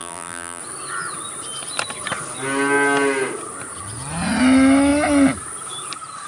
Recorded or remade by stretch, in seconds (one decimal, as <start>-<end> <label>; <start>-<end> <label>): 0.0-0.6 remade; 0.6-6.3 recorded